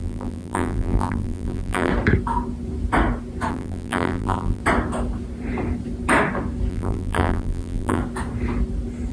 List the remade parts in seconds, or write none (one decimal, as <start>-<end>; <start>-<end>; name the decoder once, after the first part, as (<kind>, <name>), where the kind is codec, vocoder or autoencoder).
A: 0.0-1.9 (vocoder, BigVGAN v2); 3.5-4.6; 6.7-8.0